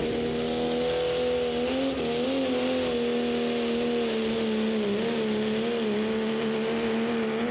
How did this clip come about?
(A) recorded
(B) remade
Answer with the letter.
A